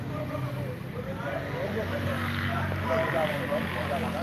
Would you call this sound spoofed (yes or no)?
no